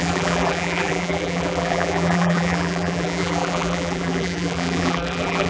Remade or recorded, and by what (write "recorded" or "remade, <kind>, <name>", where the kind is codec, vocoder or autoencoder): remade, vocoder, BigVGAN v2